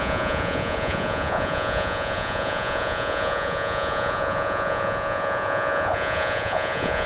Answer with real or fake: fake